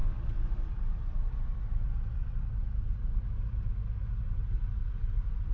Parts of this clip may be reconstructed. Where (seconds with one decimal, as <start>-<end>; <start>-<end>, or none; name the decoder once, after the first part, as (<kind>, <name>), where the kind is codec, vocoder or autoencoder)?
0.0-2.4 (vocoder, BigVGAN v2)